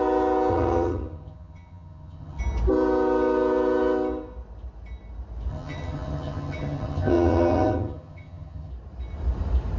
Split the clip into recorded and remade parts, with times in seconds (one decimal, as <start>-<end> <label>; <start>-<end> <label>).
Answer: 0.0-0.5 recorded; 0.5-2.4 remade; 2.4-5.5 recorded; 5.5-8.7 remade; 8.7-9.8 recorded